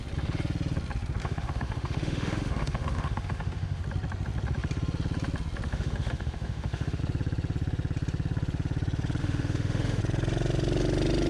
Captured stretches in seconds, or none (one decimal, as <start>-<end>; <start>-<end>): 0.0-1.2; 3.8-5.7; 7.0-9.2; 10.0-11.3